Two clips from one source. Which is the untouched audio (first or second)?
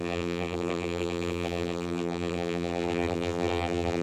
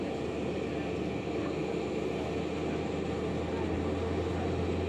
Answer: second